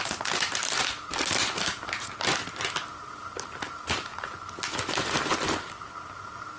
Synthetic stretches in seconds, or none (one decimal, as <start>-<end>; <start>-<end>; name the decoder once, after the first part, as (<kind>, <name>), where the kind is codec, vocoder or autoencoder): 0.0-4.1 (vocoder, BigVGAN v2); 6.1-6.6